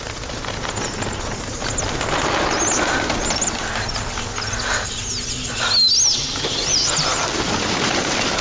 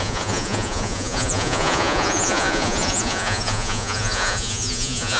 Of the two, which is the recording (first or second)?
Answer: first